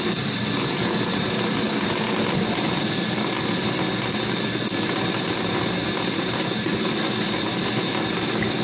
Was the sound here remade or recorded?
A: recorded